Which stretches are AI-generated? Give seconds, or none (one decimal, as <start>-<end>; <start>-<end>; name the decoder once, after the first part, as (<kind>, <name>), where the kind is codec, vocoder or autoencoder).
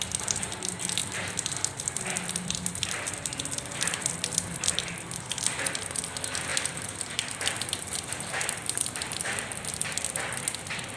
1.0-6.0 (vocoder, BigVGAN v2); 6.5-10.4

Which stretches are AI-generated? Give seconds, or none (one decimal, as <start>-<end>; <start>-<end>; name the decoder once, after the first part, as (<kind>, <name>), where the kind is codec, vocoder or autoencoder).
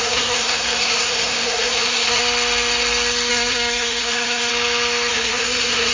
0.0-2.2 (codec, SNAC); 3.3-4.5; 5.1-5.9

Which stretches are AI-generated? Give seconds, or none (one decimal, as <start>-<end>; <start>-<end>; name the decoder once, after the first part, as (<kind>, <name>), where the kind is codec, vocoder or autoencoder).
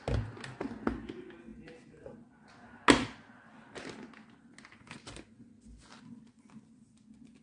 none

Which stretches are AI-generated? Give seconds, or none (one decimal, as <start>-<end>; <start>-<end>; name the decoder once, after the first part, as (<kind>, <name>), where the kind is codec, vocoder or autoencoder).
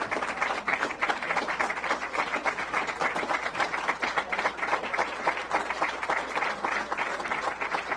0.7-1.3 (codec, HILCodec)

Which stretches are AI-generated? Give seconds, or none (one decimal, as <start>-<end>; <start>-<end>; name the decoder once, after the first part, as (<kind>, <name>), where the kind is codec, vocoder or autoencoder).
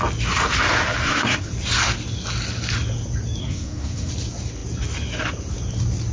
1.0-1.5 (codec, SNAC); 3.4-4.1